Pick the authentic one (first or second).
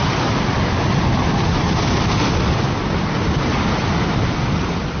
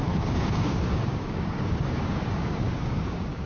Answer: first